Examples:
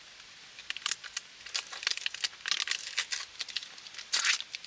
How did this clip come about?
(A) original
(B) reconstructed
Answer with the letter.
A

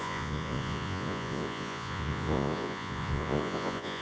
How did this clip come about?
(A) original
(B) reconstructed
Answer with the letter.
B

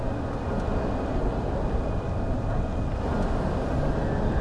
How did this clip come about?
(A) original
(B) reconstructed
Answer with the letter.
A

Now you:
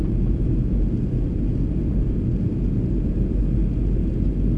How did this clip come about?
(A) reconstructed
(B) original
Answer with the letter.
B